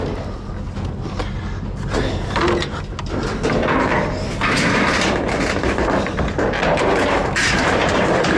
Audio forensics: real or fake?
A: real